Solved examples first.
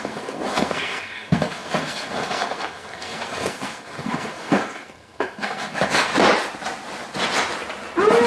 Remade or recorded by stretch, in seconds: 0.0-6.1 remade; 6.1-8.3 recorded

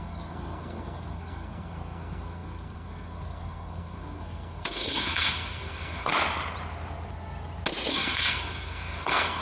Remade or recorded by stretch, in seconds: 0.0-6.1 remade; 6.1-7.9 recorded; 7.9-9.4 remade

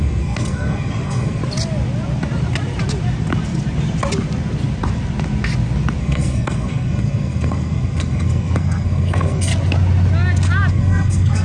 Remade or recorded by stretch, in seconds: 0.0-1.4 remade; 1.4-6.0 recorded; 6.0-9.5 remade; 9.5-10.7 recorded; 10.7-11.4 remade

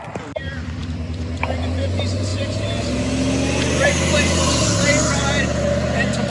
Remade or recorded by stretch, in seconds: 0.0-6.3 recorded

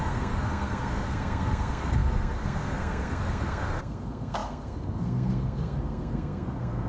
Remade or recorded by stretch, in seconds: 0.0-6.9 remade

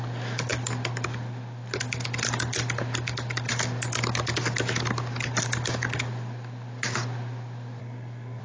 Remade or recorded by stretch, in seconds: 0.0-7.8 recorded; 7.8-8.4 remade

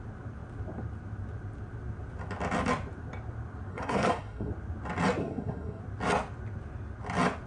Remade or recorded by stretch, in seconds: 0.0-3.7 recorded; 3.7-4.5 remade; 4.5-5.2 recorded; 5.2-5.8 remade; 5.8-7.5 recorded

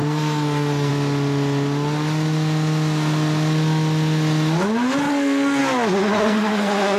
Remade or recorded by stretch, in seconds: 0.0-0.9 remade; 0.9-5.1 recorded; 5.1-5.6 remade; 5.6-6.2 recorded; 6.2-7.0 remade